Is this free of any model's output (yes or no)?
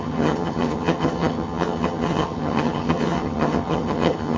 no